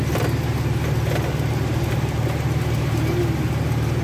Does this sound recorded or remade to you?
recorded